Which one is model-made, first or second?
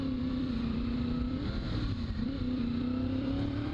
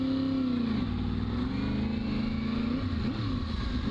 first